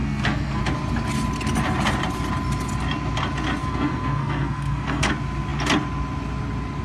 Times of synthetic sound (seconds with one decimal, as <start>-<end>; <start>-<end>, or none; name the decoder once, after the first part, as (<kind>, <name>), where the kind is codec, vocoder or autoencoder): 0.0-0.6 (codec, SNAC); 3.6-5.1